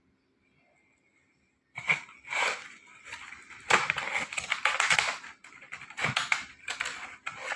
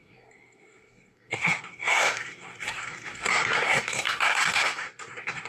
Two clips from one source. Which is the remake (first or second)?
second